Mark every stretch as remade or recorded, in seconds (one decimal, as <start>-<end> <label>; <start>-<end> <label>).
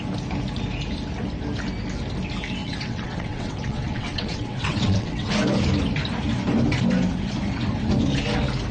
0.0-2.6 recorded; 2.6-5.3 remade; 5.3-8.7 recorded